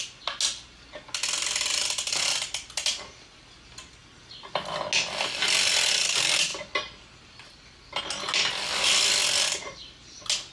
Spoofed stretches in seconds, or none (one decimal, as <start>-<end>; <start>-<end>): none